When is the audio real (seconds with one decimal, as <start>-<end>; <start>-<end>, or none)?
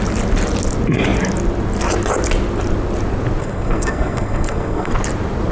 0.0-3.4; 4.9-5.5